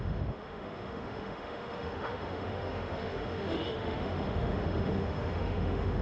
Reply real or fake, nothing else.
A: fake